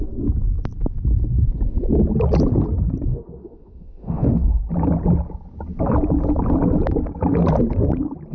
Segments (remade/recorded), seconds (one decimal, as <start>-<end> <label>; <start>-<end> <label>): 0.0-3.1 recorded; 3.1-4.6 remade; 4.6-8.3 recorded